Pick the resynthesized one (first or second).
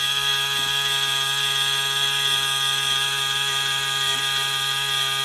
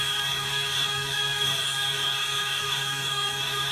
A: second